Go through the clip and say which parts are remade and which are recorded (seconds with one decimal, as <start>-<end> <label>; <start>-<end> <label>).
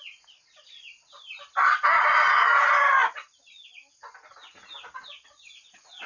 0.0-6.1 recorded